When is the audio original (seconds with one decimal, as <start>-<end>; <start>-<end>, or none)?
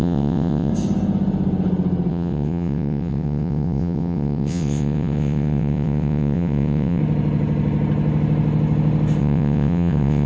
0.7-2.1; 7.0-9.2